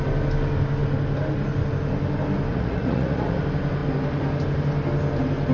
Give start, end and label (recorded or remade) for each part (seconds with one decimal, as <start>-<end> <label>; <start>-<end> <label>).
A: 0.0-2.5 recorded; 2.5-3.4 remade; 3.4-5.5 recorded